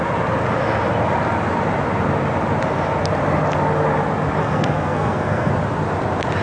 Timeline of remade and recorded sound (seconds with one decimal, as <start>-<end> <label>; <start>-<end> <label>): 0.0-4.4 recorded; 4.4-5.5 remade; 5.5-6.4 recorded